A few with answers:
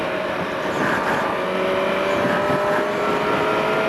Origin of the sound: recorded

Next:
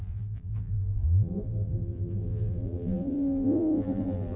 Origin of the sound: remade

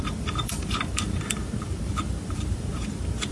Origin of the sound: remade